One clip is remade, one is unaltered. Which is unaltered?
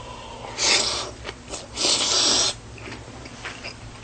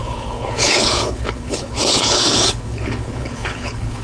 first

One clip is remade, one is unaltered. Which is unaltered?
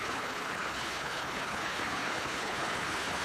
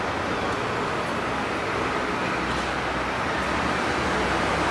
second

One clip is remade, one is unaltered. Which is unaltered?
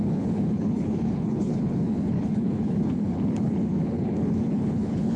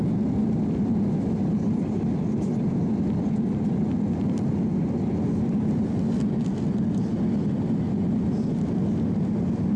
second